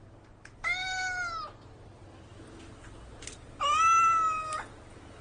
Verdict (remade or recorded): recorded